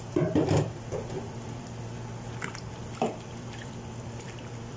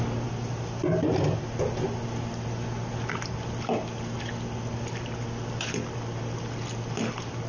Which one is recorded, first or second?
second